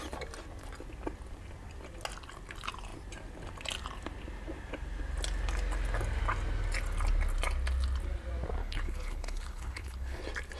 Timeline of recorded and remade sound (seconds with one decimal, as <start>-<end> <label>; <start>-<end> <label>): 0.0-8.6 recorded; 8.6-10.2 remade; 10.2-10.6 recorded